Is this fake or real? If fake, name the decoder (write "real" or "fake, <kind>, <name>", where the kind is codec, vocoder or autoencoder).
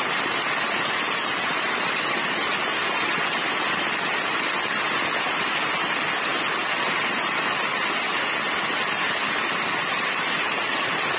real